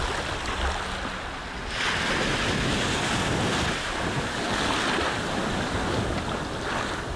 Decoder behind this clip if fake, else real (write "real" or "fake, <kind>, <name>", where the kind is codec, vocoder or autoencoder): real